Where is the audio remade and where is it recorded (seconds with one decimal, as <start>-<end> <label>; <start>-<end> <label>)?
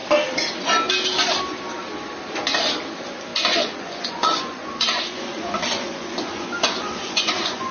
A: 0.0-3.3 recorded; 3.3-7.7 remade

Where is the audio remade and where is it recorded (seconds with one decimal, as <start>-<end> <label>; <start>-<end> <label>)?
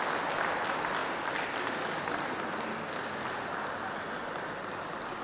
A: 0.0-5.2 recorded